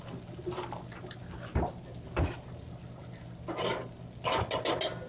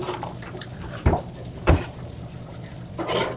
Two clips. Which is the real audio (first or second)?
first